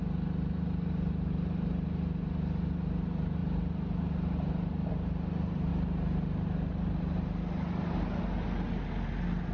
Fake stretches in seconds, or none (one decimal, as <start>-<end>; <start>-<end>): none